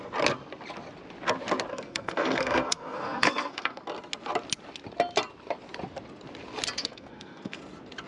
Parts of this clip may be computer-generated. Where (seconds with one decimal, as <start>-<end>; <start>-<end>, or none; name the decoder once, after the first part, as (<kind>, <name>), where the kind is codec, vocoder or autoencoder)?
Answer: 1.7-3.8 (codec, SNAC); 6.8-7.6